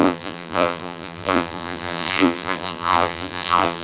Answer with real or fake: fake